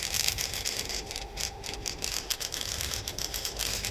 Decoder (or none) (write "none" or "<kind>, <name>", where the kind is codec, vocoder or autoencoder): autoencoder, DAC-VAE